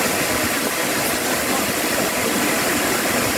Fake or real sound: real